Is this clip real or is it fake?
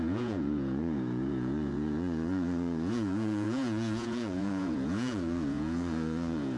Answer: fake